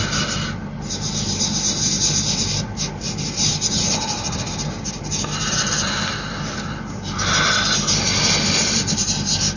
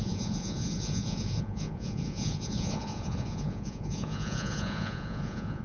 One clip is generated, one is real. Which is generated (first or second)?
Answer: second